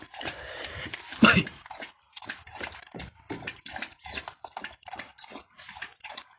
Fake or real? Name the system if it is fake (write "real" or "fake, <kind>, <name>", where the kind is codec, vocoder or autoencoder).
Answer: fake, vocoder, BigVGAN v2